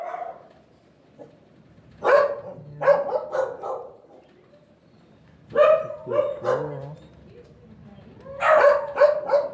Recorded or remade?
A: recorded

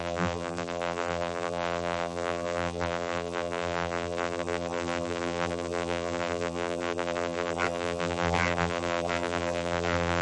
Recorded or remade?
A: remade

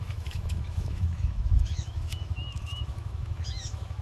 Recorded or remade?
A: remade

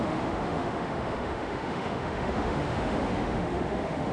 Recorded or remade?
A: remade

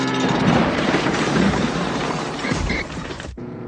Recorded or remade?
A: remade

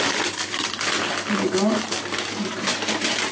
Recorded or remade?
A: recorded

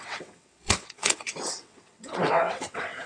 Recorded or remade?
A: remade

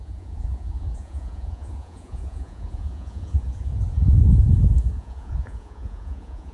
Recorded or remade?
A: remade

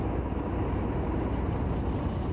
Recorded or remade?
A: recorded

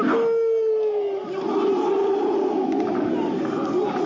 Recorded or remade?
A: recorded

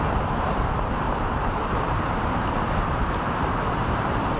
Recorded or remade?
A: remade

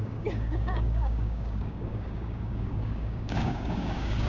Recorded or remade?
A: remade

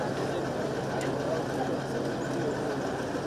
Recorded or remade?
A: recorded